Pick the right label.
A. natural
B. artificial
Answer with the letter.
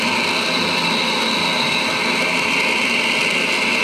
A